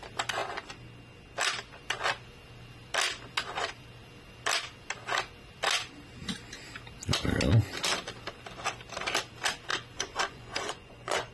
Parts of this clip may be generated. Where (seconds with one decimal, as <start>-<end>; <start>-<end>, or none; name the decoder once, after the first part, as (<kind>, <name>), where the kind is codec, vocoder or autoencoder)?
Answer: 9.7-11.3 (vocoder, Vocos)